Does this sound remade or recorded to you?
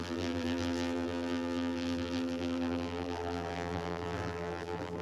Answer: remade